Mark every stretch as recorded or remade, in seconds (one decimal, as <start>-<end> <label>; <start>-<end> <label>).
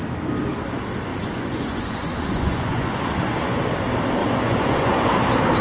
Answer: 0.0-1.1 recorded; 1.1-3.6 remade; 3.6-4.2 recorded; 4.2-5.1 remade; 5.1-5.6 recorded